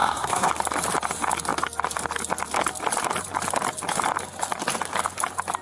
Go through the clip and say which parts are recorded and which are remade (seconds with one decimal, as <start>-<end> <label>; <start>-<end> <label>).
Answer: 0.0-0.5 remade; 0.5-5.6 recorded

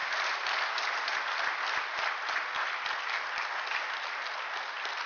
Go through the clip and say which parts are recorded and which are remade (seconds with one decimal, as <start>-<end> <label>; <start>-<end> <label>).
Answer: 0.0-5.1 recorded